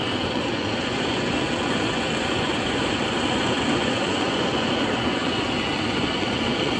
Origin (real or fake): fake